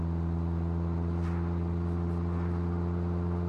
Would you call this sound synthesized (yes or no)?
no